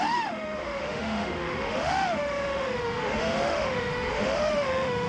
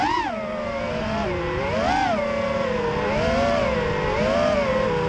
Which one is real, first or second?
second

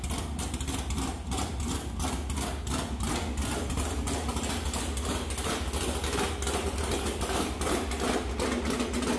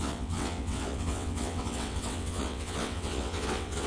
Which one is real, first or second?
first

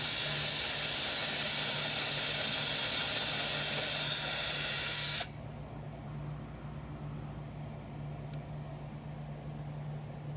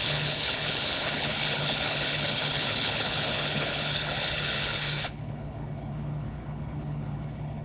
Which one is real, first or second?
first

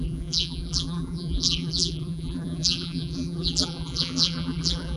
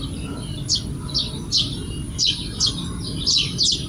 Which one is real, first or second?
second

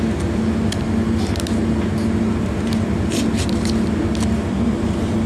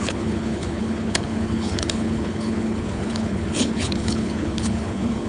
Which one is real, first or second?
first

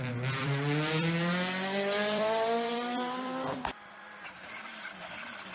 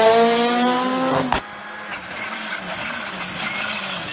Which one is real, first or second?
second